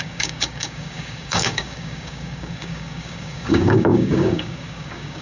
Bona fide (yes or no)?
no